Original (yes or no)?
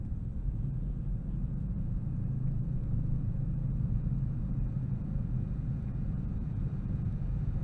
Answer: no